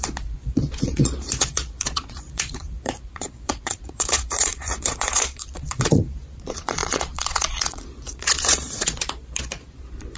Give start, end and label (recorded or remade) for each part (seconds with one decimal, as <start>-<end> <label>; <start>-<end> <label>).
0.0-10.2 remade